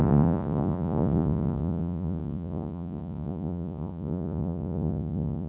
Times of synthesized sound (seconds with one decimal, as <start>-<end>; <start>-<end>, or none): 0.0-5.5